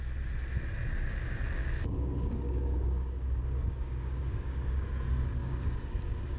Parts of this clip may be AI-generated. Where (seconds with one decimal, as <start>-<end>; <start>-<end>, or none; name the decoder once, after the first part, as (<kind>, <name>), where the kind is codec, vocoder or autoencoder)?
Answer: 1.6-4.9 (codec, DAC); 5.4-6.4